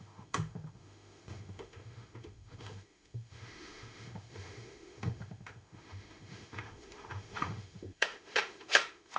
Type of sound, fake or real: fake